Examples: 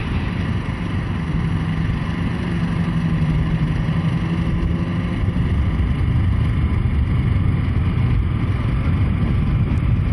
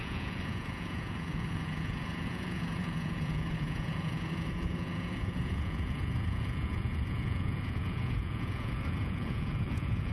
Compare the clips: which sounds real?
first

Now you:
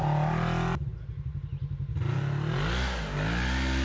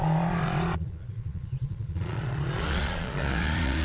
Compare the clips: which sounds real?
first